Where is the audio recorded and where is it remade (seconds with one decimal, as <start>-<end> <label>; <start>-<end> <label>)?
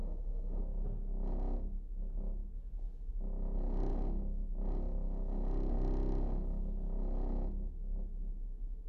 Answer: 0.0-0.6 remade; 0.6-8.9 recorded